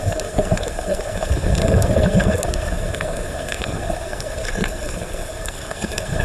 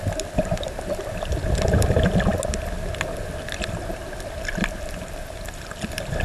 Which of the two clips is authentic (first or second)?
second